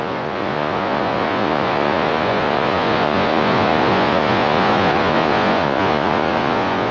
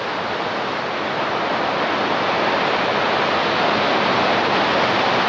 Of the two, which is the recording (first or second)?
second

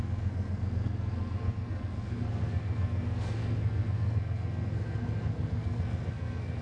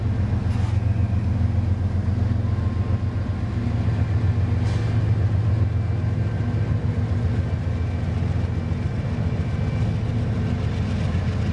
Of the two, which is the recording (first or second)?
second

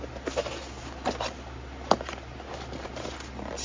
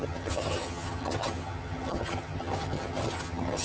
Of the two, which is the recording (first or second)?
first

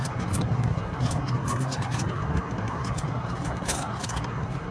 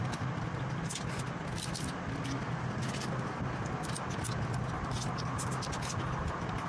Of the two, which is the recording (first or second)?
second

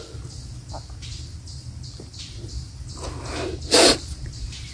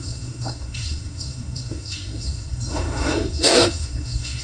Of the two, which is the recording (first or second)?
first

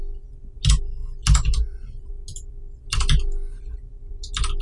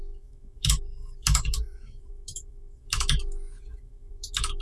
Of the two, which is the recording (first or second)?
first